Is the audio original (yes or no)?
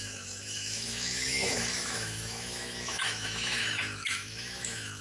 no